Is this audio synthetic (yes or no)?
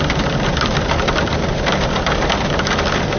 no